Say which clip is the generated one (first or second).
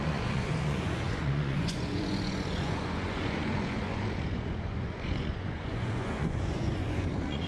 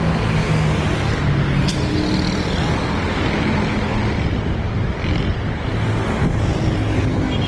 first